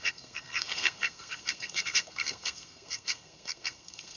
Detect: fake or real fake